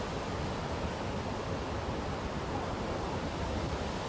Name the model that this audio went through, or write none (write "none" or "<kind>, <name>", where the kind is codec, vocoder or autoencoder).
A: none